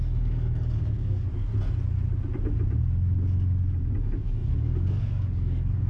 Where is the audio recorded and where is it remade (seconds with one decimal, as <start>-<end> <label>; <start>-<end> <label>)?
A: 0.0-1.5 remade; 1.5-4.0 recorded; 4.0-5.9 remade